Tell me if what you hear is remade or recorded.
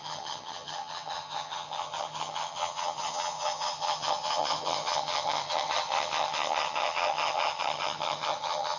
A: remade